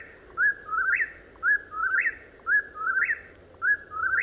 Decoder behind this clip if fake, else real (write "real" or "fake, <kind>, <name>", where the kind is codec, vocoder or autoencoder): real